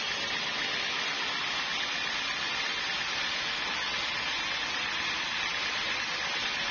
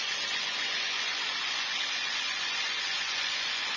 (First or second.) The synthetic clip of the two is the second